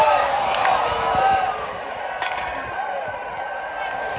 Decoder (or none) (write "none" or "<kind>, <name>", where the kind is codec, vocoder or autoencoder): none